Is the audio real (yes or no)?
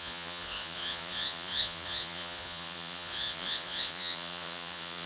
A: no